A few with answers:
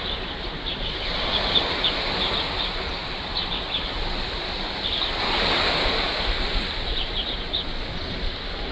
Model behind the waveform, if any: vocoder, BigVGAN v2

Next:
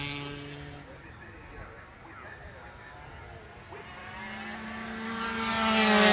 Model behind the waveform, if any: none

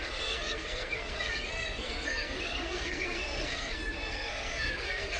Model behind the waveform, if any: codec, SNAC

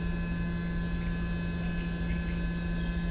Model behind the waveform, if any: none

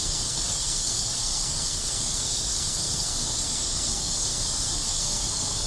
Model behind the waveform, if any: codec, SNAC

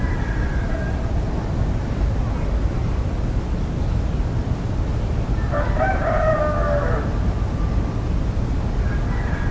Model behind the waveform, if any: none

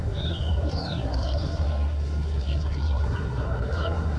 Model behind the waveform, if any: codec, SNAC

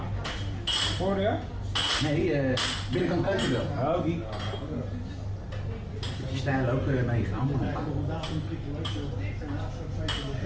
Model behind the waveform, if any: none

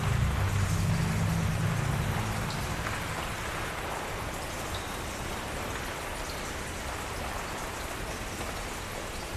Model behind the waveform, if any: none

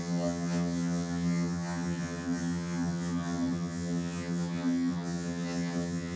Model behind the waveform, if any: vocoder, HiFi-GAN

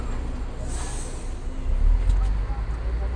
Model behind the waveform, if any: none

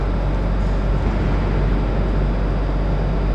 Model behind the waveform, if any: none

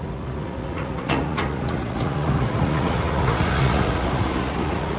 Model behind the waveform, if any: vocoder, Vocos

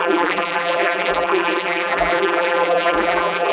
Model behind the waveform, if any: vocoder, BigVGAN v2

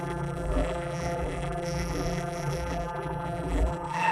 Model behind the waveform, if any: vocoder, BigVGAN v2